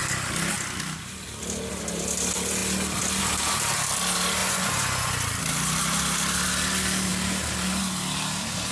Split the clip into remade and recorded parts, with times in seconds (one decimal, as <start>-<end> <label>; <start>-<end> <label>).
0.0-4.4 recorded; 4.4-5.1 remade; 5.1-8.7 recorded